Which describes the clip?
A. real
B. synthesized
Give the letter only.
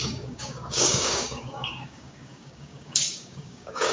B